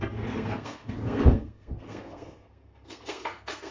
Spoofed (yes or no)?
yes